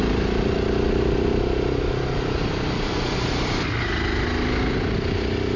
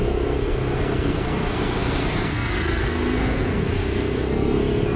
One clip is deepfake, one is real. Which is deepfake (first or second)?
second